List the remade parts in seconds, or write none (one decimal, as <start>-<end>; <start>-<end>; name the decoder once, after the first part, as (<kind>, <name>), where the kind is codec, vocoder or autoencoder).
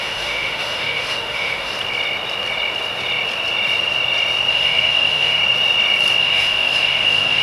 0.0-1.7 (autoencoder, DAC-VAE); 4.5-5.4; 6.2-7.4